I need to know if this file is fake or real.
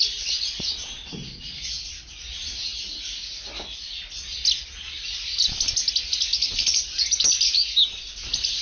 real